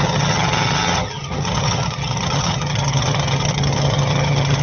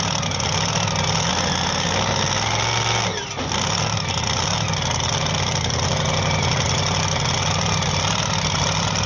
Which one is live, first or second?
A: second